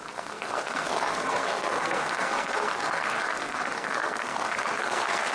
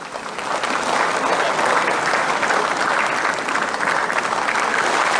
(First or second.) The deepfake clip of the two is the first